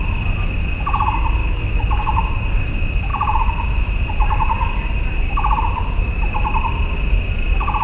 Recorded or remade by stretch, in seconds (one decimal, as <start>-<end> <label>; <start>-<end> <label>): 0.0-1.4 recorded; 1.4-2.0 remade; 2.0-7.8 recorded